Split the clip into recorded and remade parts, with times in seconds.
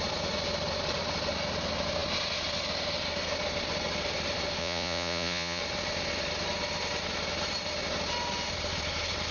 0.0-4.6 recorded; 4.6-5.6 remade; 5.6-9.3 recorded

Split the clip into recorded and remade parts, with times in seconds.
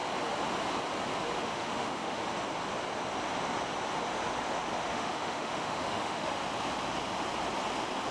0.0-1.4 recorded; 1.4-2.2 remade; 2.2-4.9 recorded; 4.9-6.4 remade; 6.4-8.1 recorded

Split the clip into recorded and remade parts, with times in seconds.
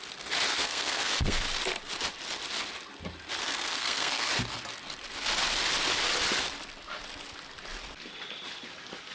0.0-0.5 recorded; 0.5-1.4 remade; 1.4-3.4 recorded; 3.4-4.3 remade; 4.3-9.1 recorded